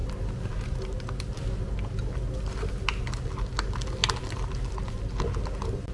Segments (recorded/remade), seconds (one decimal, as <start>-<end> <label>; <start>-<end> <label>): 0.0-5.9 recorded